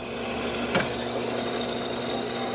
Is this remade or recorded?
recorded